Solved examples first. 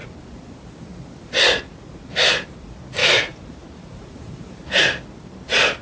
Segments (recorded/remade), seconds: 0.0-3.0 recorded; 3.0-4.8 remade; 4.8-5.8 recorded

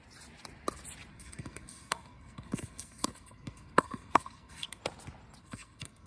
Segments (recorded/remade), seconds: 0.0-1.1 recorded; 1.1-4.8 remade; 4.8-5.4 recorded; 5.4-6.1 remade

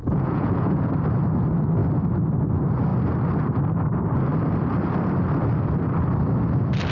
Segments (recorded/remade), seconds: 0.0-0.9 remade; 0.9-6.9 recorded